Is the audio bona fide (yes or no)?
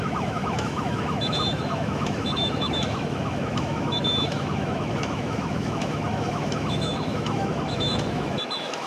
no